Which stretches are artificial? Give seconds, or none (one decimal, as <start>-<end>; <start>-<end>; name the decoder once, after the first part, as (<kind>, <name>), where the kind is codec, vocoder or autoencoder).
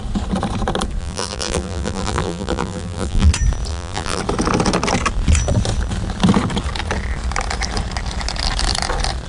1.0-3.3 (vocoder, BigVGAN v2); 3.7-4.2